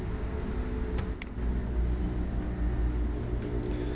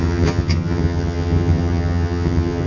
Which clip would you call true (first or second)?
first